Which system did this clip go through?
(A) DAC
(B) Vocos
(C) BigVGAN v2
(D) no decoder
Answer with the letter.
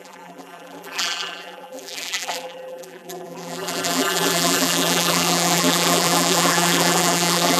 C